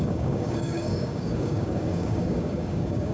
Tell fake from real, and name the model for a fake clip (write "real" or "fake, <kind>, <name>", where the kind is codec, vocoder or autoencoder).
fake, codec, DAC